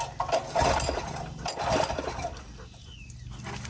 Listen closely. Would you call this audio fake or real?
real